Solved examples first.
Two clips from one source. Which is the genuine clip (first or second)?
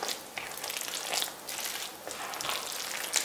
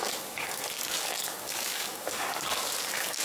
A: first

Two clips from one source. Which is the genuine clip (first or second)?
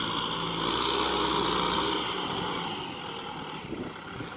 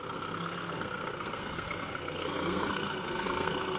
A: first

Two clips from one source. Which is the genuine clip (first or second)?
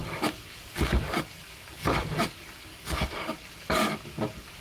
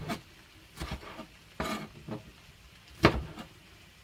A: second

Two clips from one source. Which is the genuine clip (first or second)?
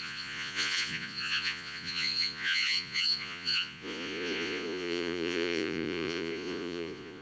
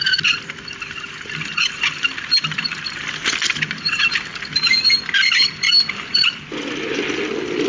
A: second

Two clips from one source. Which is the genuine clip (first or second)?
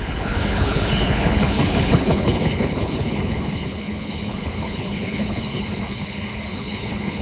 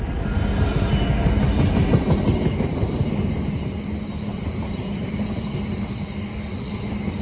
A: second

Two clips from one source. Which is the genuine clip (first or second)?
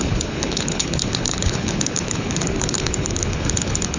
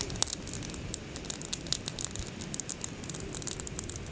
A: second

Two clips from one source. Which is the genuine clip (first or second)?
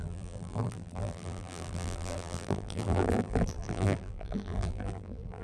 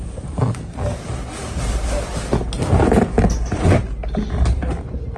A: second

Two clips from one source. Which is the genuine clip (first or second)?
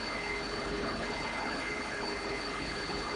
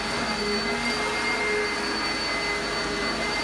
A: second